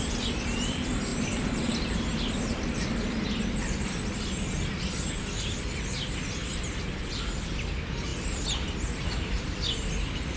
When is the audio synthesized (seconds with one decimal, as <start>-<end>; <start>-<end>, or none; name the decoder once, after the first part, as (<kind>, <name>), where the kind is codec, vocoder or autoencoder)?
none